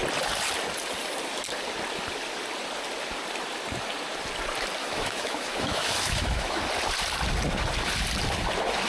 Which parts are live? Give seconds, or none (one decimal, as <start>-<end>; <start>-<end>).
0.0-4.8; 6.6-8.9